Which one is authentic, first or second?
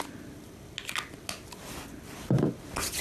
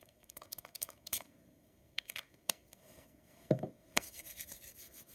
first